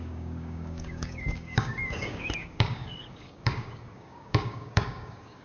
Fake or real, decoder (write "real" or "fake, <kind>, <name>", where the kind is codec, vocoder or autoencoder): fake, codec, DAC